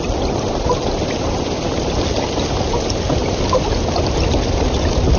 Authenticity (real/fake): real